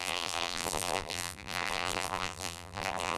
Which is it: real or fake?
fake